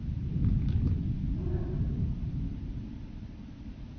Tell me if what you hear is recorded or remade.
recorded